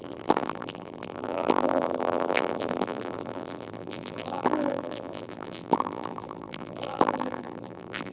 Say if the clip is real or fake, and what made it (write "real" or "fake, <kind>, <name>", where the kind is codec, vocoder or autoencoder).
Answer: fake, vocoder, BigVGAN v2